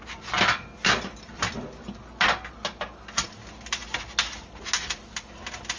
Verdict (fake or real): real